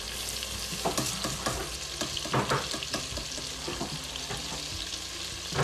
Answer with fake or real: real